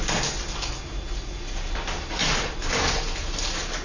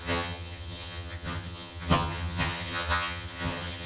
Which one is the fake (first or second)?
second